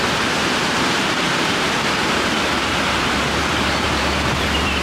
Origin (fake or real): fake